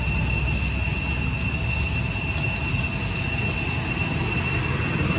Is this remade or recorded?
recorded